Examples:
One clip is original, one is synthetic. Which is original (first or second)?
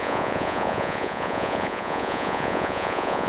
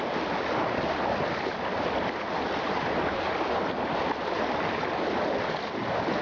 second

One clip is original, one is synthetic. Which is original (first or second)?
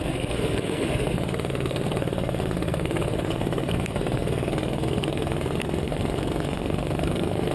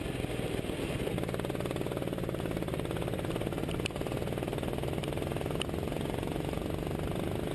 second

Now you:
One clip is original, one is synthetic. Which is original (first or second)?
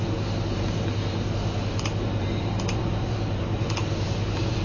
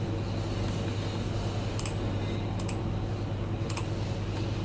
second